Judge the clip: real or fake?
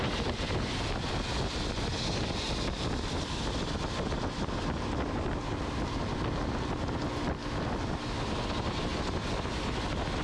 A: real